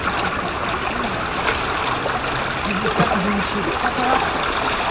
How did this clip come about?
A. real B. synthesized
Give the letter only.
A